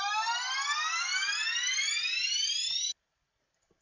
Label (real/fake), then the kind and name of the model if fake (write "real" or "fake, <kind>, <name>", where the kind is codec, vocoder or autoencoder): real